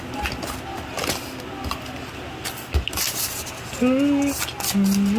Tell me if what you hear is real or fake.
real